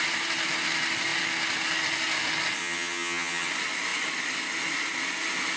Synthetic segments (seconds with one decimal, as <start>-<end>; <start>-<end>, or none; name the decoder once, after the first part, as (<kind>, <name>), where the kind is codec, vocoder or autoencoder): 2.6-3.5 (vocoder, HiFi-GAN)